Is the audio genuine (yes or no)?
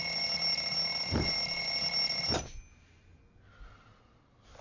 yes